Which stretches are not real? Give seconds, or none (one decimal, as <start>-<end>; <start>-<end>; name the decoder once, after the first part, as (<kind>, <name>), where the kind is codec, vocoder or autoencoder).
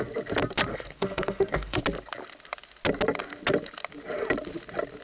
0.7-1.8 (codec, SNAC)